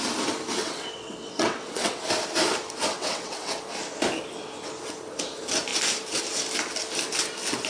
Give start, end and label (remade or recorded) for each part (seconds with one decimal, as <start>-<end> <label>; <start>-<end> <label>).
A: 0.0-0.6 recorded; 0.6-2.0 remade; 2.0-2.9 recorded; 2.9-3.6 remade; 3.6-7.7 recorded

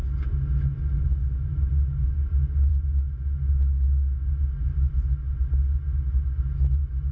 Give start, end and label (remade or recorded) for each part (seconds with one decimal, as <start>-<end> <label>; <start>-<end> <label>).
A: 0.0-7.1 recorded